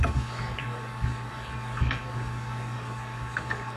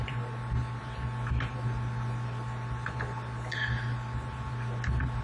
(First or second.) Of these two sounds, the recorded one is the second